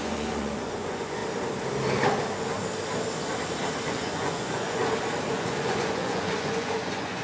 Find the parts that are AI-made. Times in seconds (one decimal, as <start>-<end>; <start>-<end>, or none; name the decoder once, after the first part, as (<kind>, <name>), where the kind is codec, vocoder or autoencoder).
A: 0.0-1.2 (vocoder, Vocos); 3.9-4.8; 5.3-7.2